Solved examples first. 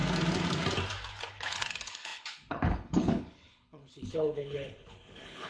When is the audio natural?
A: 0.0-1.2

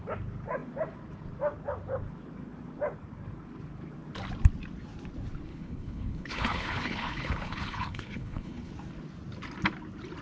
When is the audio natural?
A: 0.0-5.5; 8.7-10.2

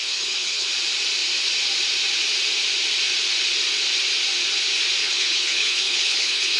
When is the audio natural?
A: 0.7-5.0

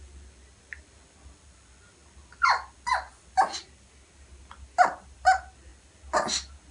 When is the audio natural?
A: 0.0-6.7

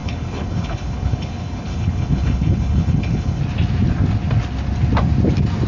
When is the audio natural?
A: 3.4-5.7

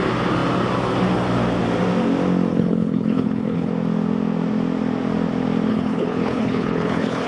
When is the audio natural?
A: 0.0-2.5; 3.7-5.7